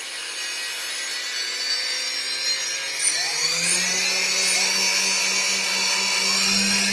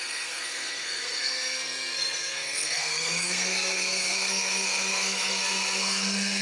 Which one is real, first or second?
first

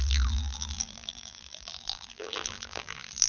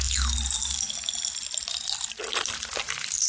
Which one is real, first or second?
second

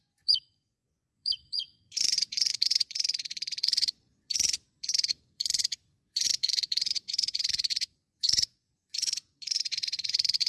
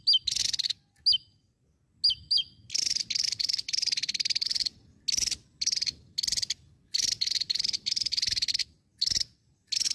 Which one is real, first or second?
second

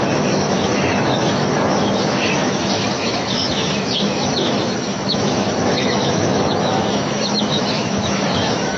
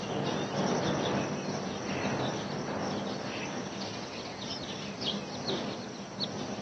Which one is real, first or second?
second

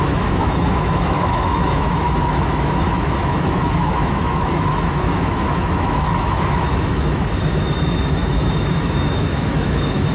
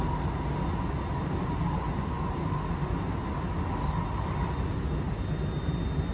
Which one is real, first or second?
second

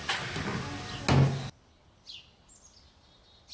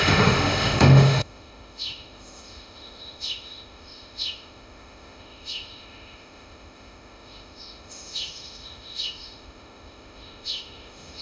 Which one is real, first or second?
first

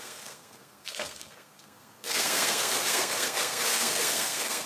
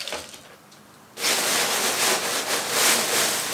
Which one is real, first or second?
second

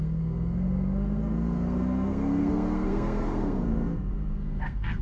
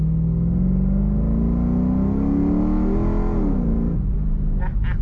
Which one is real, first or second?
second